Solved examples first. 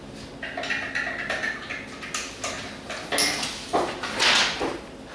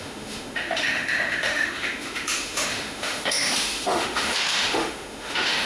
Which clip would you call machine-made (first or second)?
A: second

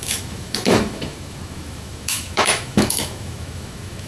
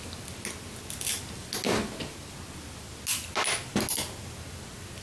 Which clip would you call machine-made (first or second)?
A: first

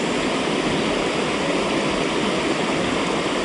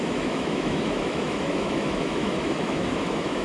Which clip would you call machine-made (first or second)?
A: second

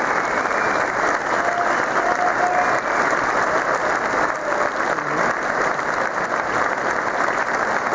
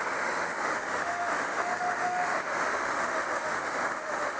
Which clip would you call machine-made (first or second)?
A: second